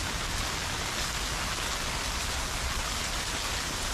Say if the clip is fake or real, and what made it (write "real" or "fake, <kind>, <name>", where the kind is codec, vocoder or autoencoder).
real